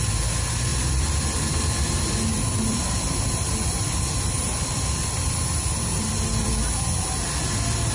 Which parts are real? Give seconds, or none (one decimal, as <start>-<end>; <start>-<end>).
0.0-0.7; 1.7-2.3; 6.5-7.9